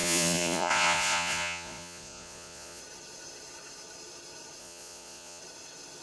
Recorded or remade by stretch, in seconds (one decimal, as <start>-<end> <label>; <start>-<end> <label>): 0.0-2.8 remade; 2.8-4.6 recorded; 4.6-5.4 remade; 5.4-6.0 recorded